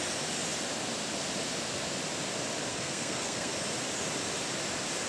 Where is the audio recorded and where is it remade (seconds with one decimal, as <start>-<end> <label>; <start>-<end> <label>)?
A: 0.0-2.7 recorded; 2.7-3.5 remade; 3.5-5.1 recorded